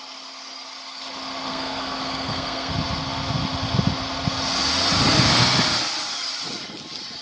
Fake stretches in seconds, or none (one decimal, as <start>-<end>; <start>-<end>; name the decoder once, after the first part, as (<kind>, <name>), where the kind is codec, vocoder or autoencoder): 1.5-2.7 (codec, SNAC)